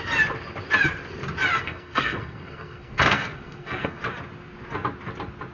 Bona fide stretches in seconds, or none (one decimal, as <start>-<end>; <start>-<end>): 0.0-1.6; 4.0-5.5